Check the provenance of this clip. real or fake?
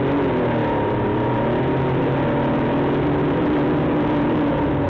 real